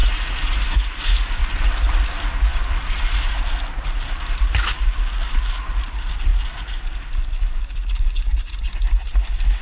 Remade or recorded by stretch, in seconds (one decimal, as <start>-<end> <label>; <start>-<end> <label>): 0.0-1.4 recorded; 1.4-2.0 remade; 2.0-9.6 recorded